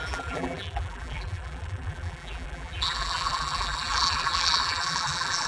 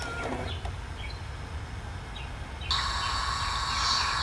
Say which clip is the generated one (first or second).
first